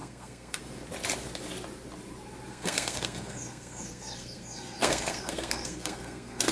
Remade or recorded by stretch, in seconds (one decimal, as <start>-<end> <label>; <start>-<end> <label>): 0.0-0.6 remade; 0.6-2.5 recorded; 2.5-6.5 remade